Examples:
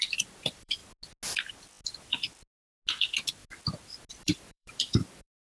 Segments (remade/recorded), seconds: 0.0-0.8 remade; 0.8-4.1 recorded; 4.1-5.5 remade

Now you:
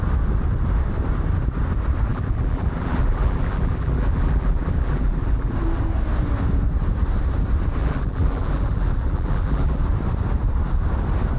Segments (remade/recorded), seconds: 0.0-2.1 recorded; 2.1-5.5 remade; 5.5-7.8 recorded; 7.8-9.8 remade; 9.8-11.4 recorded

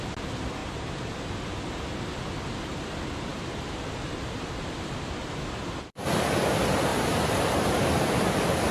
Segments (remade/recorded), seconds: 0.0-0.6 recorded; 0.6-1.1 remade; 1.1-8.7 recorded

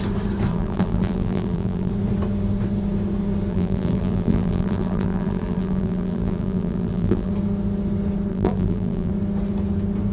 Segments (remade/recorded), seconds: 0.0-0.5 recorded; 0.5-1.9 remade; 1.9-3.5 recorded; 3.5-7.3 remade; 7.3-8.3 recorded; 8.3-9.1 remade; 9.1-10.1 recorded

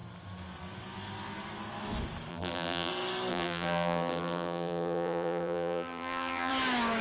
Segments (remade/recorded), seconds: 0.0-2.3 recorded; 2.3-2.9 remade; 2.9-3.3 recorded; 3.3-6.5 remade; 6.5-7.0 recorded

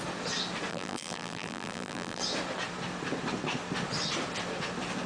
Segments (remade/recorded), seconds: 0.0-0.7 recorded; 0.7-2.2 remade; 2.2-5.1 recorded

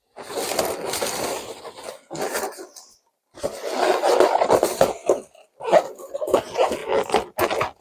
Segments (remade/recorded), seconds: 0.0-7.8 recorded

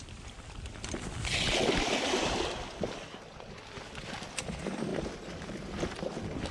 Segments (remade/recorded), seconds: 0.0-6.5 recorded